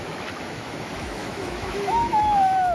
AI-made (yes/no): yes